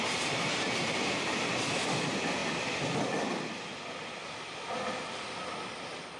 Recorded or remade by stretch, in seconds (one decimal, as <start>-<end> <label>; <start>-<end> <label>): 0.0-6.2 recorded